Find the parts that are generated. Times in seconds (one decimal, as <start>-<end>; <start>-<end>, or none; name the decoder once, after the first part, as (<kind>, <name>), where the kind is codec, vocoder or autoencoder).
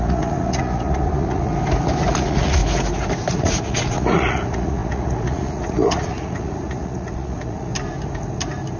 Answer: 0.0-1.5 (vocoder, Vocos); 2.1-2.6; 3.3-7.7